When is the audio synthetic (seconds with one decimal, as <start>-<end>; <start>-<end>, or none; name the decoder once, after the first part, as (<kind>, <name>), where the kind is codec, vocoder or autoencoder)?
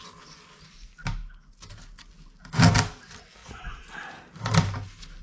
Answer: 3.4-3.9 (vocoder, Vocos)